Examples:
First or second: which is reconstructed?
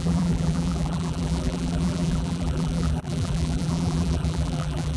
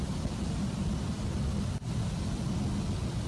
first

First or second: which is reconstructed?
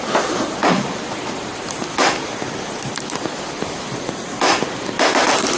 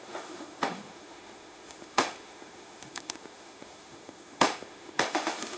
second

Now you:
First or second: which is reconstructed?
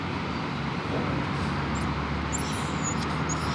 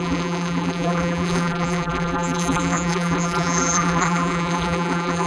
second